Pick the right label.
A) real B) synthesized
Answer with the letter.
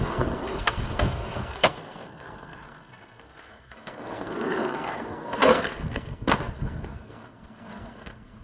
B